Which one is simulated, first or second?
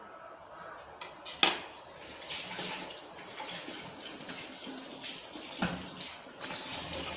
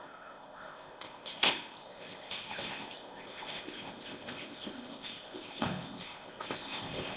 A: second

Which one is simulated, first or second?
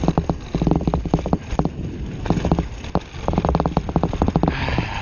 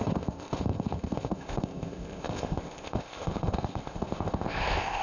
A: second